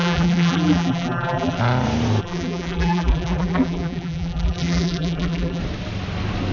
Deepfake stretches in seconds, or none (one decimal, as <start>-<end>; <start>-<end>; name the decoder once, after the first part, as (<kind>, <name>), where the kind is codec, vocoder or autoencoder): 0.0-1.6 (vocoder, BigVGAN v2); 2.2-5.6